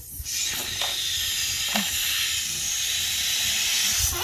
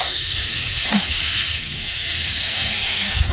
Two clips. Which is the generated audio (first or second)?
second